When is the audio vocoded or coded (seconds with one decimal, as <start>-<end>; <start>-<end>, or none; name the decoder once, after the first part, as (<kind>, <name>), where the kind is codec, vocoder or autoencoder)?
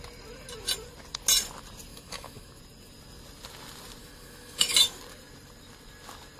1.9-2.6 (autoencoder, DAC-VAE); 4.0-5.0